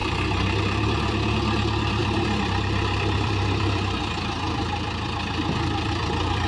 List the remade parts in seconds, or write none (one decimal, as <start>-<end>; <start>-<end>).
0.6-6.5